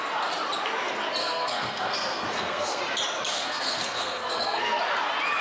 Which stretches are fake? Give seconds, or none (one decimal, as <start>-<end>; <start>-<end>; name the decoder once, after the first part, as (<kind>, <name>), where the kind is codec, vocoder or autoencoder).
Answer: 1.2-2.8 (codec, SNAC); 3.3-4.8